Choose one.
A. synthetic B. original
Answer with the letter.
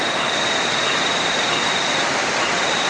A